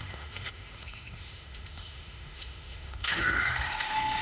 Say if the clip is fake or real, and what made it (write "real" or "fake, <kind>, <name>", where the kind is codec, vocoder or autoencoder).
fake, autoencoder, DAC-VAE